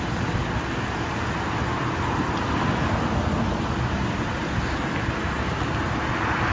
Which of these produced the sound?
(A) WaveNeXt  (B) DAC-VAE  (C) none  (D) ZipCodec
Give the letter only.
C